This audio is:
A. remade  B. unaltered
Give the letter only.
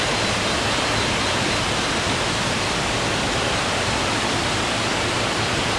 B